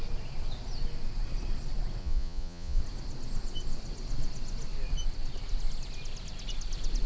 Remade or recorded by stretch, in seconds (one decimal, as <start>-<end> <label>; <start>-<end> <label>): 0.0-2.0 recorded; 2.0-2.8 remade; 2.8-7.1 recorded